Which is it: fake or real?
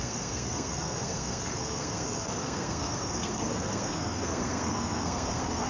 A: fake